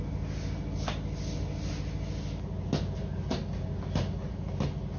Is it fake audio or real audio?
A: real